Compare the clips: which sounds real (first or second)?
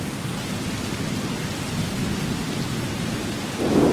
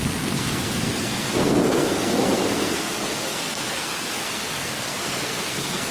first